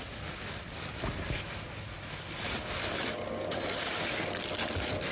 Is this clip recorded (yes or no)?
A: yes